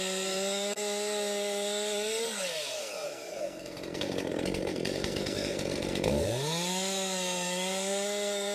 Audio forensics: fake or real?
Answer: fake